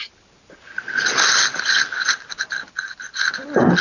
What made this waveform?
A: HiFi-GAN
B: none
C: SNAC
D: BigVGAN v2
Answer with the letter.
B